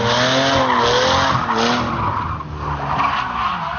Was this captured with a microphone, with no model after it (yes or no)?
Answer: yes